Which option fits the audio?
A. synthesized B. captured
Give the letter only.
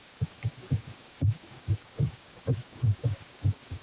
A